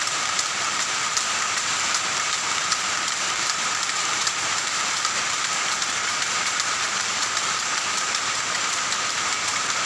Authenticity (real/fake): fake